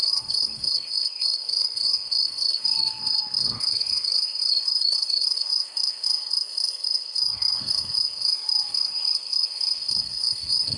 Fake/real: fake